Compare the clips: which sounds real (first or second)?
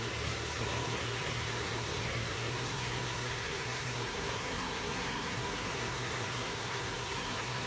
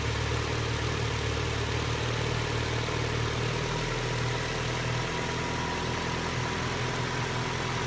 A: second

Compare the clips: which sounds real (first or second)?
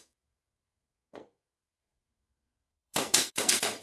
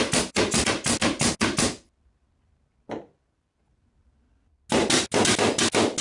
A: second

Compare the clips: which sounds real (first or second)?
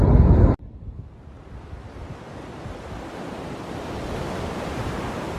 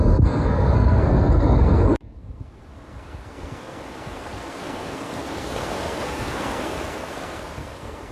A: first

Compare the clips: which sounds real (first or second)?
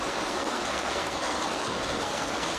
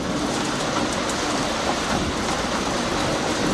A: second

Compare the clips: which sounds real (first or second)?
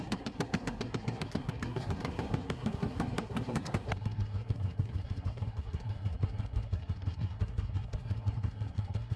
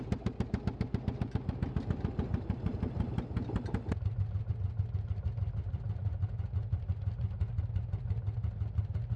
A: second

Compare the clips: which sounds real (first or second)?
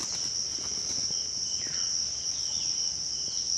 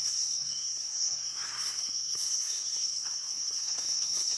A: first